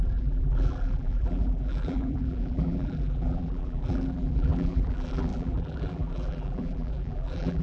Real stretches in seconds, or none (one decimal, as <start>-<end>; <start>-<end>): none